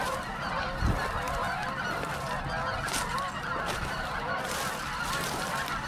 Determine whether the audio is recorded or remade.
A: recorded